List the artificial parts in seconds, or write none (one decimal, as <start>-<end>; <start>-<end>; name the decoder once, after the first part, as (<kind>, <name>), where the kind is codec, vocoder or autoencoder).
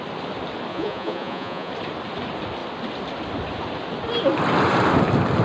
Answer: 0.7-1.7 (vocoder, Vocos)